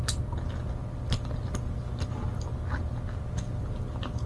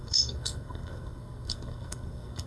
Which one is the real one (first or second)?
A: first